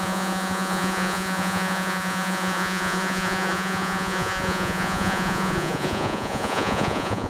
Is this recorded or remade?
remade